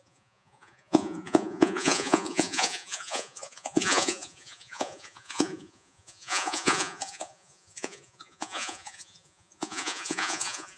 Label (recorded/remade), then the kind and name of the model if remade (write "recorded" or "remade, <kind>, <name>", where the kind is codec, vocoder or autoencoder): remade, vocoder, Vocos